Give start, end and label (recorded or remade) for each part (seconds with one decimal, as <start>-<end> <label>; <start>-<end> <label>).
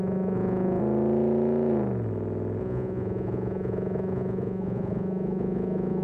0.0-0.8 remade; 0.8-2.6 recorded; 2.6-6.0 remade